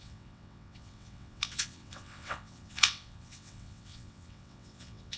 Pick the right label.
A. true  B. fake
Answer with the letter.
B